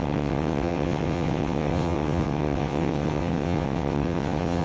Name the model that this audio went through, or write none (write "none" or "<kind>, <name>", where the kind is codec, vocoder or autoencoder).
vocoder, WaveNeXt